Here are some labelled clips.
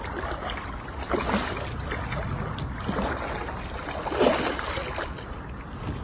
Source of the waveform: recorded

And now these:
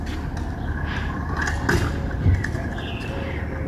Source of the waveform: recorded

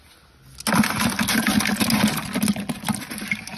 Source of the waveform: recorded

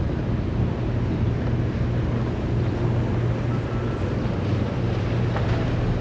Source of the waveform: recorded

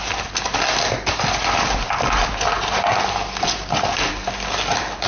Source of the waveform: recorded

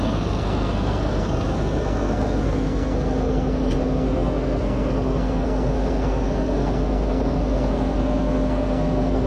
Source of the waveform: remade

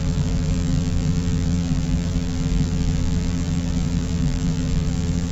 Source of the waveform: remade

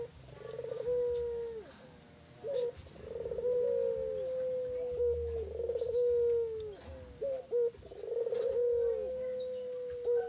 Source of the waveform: recorded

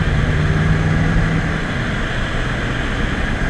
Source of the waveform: recorded